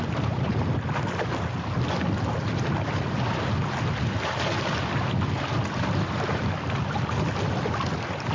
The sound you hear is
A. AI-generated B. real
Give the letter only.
B